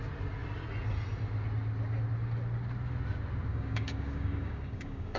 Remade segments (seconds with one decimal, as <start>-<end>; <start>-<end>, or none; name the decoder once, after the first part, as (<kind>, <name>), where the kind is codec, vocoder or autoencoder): 3.5-5.2 (codec, DAC)